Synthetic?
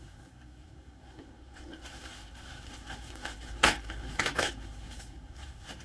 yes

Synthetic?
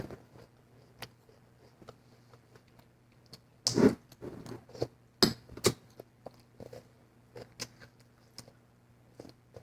no